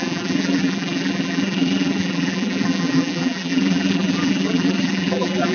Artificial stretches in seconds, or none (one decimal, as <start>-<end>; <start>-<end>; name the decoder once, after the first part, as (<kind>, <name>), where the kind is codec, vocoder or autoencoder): 0.0-5.5 (vocoder, BigVGAN v2)